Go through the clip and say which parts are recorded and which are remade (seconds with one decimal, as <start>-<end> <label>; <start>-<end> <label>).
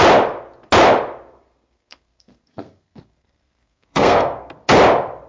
0.0-1.3 recorded; 1.3-4.5 remade; 4.5-5.3 recorded